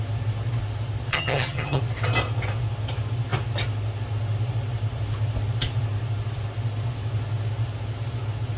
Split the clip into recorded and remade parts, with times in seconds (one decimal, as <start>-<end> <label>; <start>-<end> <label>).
0.0-1.1 recorded; 1.1-1.8 remade; 1.8-8.6 recorded